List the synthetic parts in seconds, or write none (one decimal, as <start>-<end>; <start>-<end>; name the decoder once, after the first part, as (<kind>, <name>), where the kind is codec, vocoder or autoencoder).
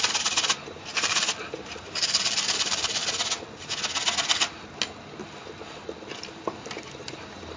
0.0-3.0 (vocoder, BigVGAN v2); 6.2-7.6